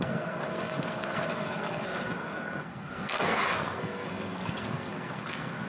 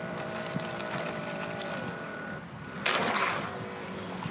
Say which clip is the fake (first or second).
first